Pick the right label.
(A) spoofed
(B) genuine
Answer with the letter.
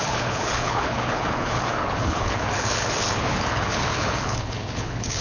A